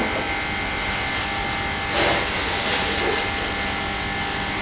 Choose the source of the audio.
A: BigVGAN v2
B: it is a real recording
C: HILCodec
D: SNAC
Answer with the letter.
B